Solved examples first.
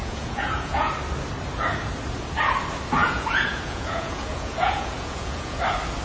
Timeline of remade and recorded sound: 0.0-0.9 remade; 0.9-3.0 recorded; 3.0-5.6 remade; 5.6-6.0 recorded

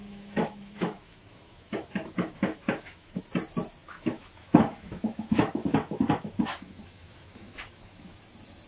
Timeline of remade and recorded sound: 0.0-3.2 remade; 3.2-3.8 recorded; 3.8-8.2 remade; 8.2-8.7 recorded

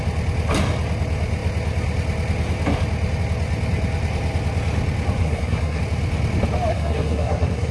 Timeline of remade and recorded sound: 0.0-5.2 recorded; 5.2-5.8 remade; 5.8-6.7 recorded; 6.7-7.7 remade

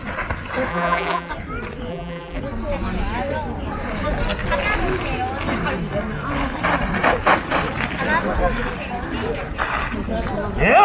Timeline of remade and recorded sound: 0.0-0.7 recorded; 0.7-1.3 remade; 1.3-1.9 recorded; 1.9-2.4 remade; 2.4-10.8 recorded